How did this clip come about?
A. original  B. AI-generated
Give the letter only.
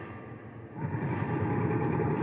A